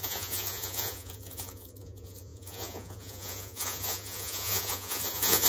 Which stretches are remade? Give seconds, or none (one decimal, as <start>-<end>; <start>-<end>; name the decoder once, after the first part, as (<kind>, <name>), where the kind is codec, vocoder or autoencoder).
0.0-5.5 (vocoder, Vocos)